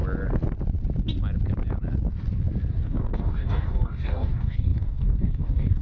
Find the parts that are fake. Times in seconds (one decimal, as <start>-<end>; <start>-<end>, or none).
2.7-5.8